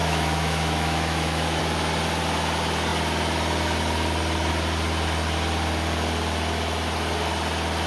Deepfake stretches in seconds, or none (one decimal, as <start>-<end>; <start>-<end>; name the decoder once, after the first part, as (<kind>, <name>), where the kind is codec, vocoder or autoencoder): 0.0-1.6 (autoencoder, DAC-VAE)